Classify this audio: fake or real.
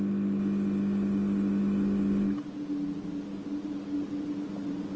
real